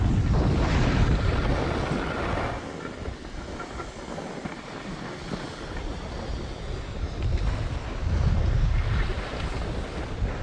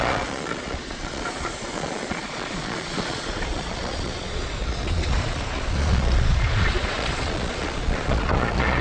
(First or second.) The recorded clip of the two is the first